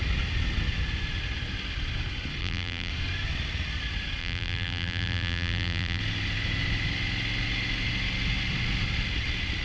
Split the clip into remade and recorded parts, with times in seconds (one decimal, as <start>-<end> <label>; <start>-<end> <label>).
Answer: 0.0-2.4 recorded; 2.4-2.9 remade; 2.9-4.2 recorded; 4.2-6.0 remade; 6.0-9.6 recorded